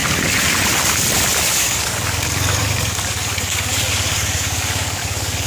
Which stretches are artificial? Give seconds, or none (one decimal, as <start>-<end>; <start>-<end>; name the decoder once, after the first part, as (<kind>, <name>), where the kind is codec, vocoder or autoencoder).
1.5-5.5 (codec, DAC)